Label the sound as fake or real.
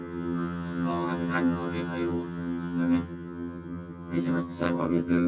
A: fake